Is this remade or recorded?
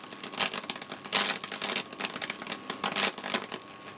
recorded